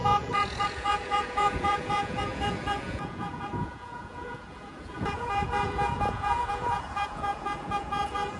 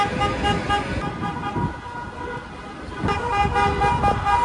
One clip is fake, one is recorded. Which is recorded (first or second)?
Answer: second